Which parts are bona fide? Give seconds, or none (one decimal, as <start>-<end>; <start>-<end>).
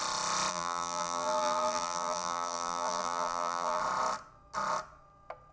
0.0-0.5; 3.8-5.5